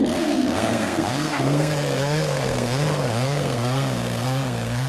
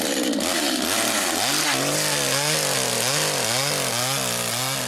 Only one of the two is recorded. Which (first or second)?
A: second